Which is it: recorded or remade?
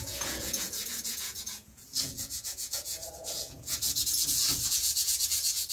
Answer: remade